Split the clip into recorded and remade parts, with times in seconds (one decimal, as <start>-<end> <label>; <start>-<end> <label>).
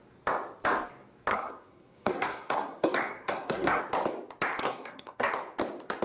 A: 0.0-1.3 recorded; 1.3-3.8 remade; 3.8-4.6 recorded; 4.6-5.3 remade; 5.3-6.0 recorded